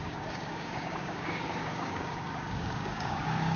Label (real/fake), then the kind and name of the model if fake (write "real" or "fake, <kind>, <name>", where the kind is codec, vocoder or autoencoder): fake, codec, DAC